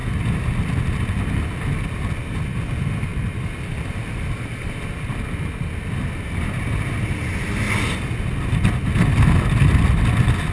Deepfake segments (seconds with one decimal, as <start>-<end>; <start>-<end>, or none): none